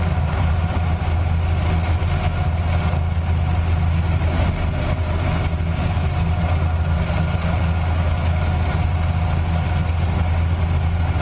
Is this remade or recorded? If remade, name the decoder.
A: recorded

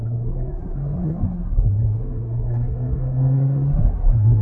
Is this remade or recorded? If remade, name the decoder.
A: remade, codec, SNAC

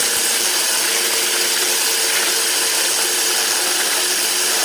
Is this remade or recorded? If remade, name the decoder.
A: recorded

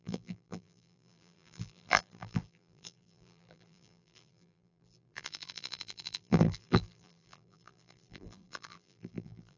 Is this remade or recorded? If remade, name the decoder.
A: remade, vocoder, BigVGAN v2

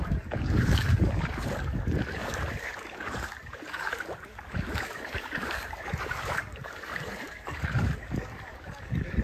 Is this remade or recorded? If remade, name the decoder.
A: remade, codec, DAC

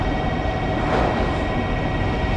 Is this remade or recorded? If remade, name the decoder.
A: recorded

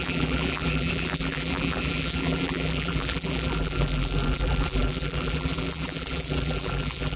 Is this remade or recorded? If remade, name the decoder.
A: remade, vocoder, BigVGAN v2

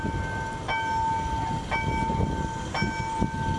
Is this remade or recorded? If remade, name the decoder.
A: recorded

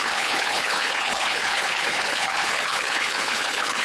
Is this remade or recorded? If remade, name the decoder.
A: remade, codec, HILCodec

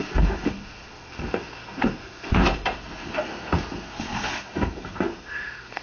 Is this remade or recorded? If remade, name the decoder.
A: remade, codec, SNAC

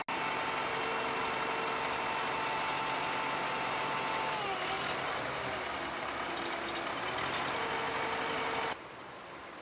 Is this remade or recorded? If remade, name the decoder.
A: recorded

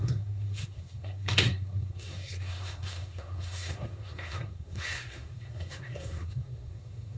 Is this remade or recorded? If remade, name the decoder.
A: remade, codec, SNAC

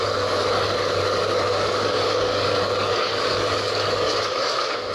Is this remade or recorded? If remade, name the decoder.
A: remade, codec, DAC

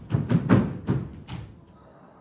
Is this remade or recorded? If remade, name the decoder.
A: recorded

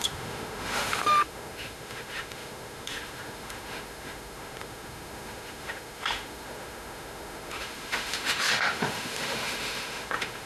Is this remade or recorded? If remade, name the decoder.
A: remade, autoencoder, DAC-VAE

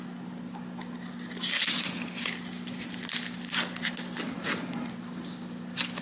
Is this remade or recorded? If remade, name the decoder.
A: recorded